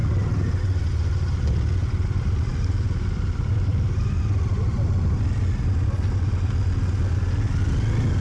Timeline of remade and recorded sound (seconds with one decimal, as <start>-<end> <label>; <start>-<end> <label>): 0.0-8.2 recorded